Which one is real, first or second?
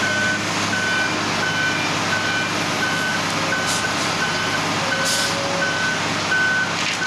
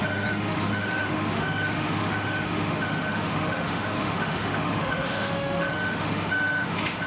first